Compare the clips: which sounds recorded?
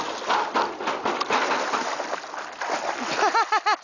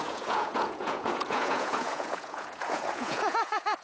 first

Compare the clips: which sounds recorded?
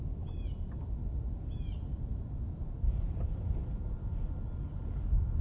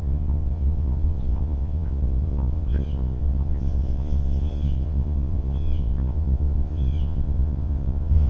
first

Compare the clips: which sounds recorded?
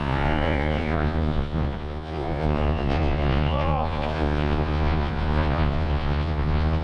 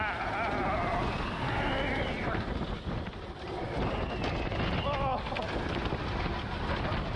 second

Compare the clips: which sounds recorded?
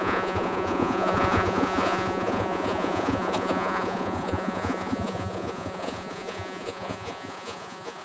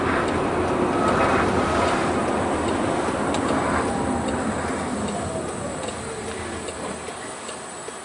second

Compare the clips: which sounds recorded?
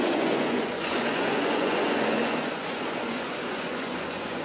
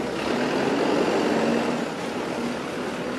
second